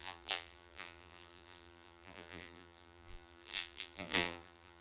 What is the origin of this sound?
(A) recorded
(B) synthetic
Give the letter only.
B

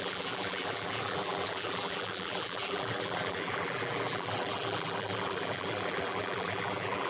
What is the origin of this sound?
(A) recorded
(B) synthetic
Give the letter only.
B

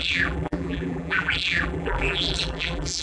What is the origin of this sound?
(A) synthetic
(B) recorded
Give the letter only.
A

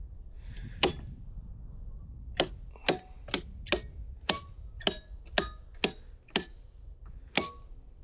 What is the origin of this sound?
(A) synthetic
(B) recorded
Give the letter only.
B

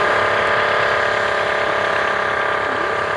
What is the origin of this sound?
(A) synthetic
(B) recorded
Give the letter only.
B